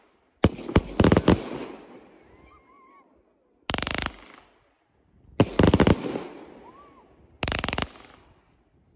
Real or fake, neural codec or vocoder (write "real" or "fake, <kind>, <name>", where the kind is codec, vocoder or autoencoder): real